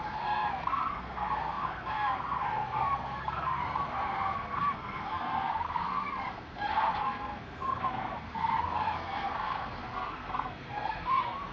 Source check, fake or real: fake